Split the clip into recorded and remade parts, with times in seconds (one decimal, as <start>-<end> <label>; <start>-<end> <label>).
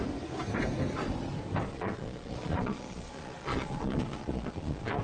0.0-1.7 recorded; 1.7-5.0 remade